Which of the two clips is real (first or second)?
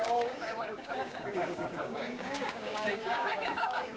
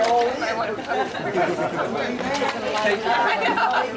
second